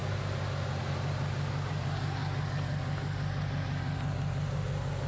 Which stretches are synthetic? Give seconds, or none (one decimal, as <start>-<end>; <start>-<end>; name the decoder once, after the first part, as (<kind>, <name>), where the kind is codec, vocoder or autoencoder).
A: none